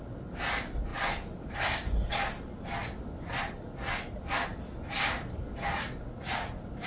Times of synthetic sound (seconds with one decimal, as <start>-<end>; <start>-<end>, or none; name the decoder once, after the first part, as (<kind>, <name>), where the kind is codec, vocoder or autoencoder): none